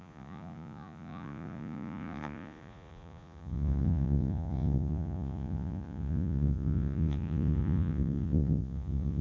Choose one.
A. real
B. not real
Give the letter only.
B